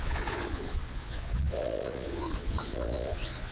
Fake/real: fake